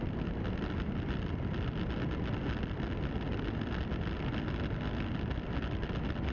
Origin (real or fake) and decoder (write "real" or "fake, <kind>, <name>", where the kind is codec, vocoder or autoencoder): real